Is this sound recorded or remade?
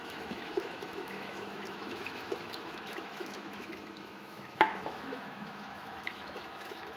remade